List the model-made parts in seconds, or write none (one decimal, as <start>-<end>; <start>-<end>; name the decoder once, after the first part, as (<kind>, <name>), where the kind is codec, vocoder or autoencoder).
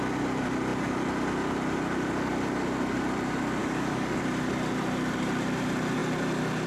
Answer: 3.6-4.2 (codec, DAC)